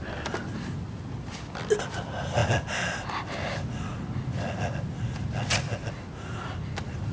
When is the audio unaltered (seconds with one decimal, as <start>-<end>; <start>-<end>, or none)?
0.0-7.1